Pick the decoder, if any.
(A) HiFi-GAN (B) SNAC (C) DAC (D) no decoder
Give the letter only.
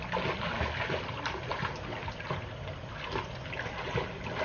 D